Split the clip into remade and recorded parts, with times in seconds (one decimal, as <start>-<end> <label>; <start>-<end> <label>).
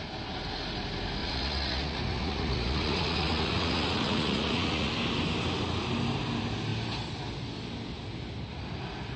0.0-1.2 recorded; 1.2-4.9 remade; 4.9-9.2 recorded